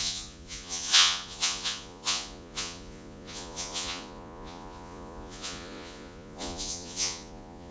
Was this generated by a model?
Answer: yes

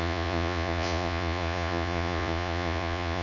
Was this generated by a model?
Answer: yes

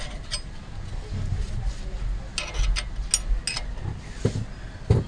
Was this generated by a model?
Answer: no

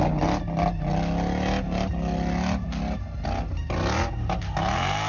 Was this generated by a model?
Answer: no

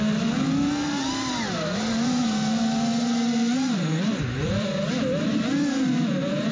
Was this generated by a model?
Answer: no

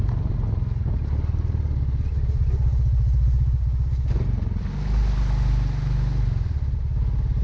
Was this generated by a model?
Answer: no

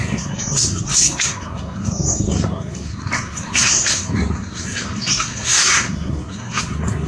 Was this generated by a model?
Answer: yes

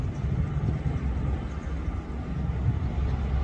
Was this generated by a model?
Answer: no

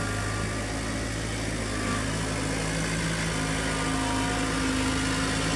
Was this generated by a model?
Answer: no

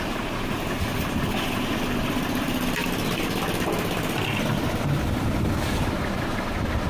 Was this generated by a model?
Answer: no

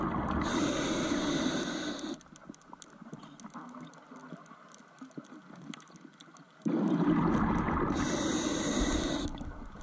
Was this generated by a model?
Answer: no